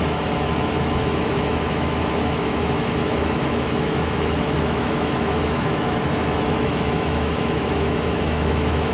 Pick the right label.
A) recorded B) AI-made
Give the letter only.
B